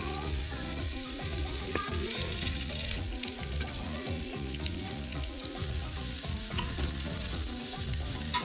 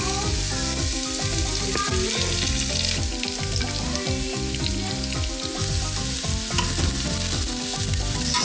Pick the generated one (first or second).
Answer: first